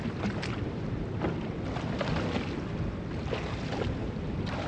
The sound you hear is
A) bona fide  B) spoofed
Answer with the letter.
A